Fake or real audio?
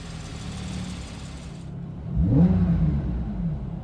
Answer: real